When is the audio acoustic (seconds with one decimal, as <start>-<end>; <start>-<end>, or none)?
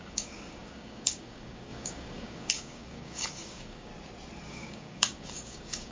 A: 3.9-4.5